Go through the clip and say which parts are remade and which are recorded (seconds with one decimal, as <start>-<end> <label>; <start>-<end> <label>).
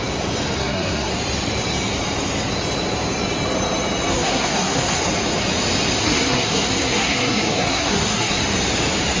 0.0-0.6 recorded; 0.6-1.1 remade; 1.1-4.1 recorded; 4.1-5.0 remade; 5.0-6.0 recorded; 6.0-8.4 remade; 8.4-9.2 recorded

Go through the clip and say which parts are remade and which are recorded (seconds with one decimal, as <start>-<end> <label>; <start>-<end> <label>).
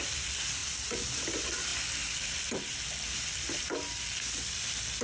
0.0-5.0 recorded